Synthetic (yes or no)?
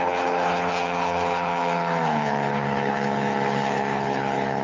yes